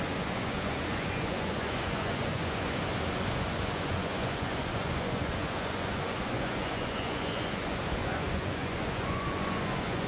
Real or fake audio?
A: fake